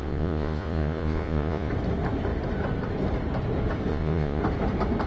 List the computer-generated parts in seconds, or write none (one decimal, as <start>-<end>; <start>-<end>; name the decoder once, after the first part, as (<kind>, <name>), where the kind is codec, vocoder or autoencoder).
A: 0.0-1.7 (vocoder, Vocos); 3.9-4.4